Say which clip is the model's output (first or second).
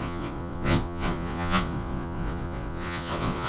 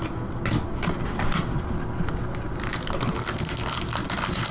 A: first